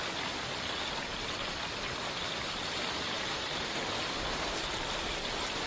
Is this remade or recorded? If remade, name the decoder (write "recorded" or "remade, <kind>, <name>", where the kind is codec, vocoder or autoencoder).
recorded